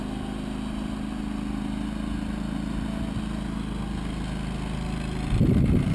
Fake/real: real